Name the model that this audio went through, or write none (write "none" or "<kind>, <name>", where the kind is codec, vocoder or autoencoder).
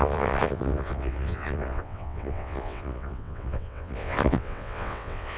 vocoder, WaveNeXt